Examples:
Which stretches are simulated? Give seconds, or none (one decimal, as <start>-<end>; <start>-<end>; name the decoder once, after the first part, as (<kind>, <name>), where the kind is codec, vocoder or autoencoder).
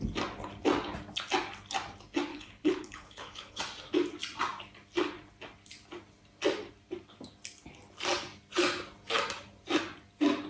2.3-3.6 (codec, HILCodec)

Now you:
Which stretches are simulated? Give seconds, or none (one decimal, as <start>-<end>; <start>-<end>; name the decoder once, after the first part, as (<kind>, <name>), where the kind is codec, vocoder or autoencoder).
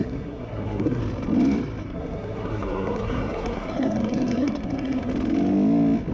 0.0-1.0 (codec, SNAC); 1.8-5.1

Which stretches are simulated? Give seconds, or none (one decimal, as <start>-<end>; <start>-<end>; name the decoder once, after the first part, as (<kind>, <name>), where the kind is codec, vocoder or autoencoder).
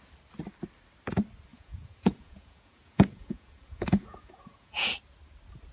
1.5-4.9 (vocoder, Vocos)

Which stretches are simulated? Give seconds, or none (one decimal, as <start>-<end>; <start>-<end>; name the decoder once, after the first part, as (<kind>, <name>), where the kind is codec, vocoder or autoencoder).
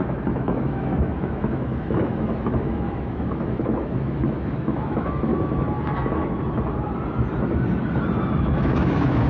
0.0-5.3 (autoencoder, DAC-VAE); 5.8-6.2; 8.4-9.3